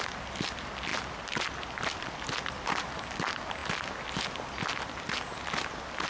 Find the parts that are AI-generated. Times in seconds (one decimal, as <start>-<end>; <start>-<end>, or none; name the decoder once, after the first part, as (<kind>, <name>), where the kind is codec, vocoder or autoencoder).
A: none